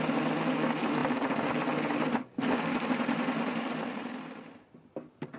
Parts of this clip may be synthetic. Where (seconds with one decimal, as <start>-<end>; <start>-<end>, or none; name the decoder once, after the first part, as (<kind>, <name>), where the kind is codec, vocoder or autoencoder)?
none